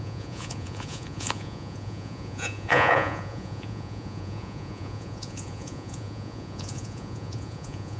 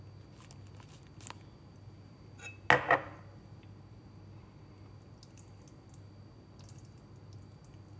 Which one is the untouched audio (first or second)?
second